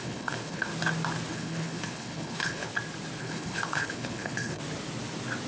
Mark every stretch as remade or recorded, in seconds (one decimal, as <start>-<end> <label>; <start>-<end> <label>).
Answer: 0.0-0.7 remade; 0.7-1.3 recorded; 1.3-2.7 remade; 2.7-3.2 recorded; 3.2-4.6 remade; 4.6-5.5 recorded